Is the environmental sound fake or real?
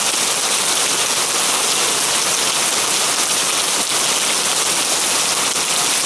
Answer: real